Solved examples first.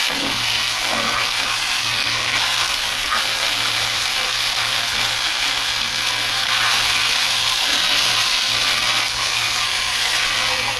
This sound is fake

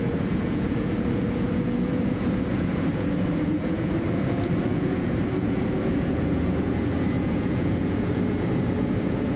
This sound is fake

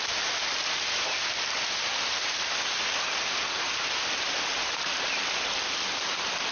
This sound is real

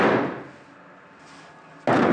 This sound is real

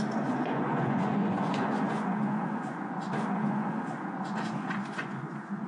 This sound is fake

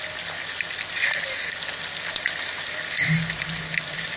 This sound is real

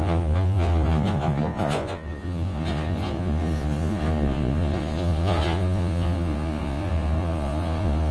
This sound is fake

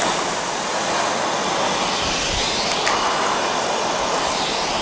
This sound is real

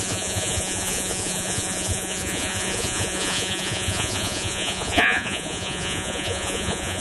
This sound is fake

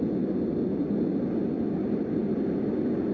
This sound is real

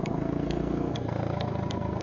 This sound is fake